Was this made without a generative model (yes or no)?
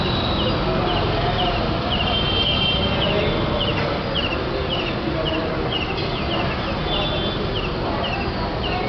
yes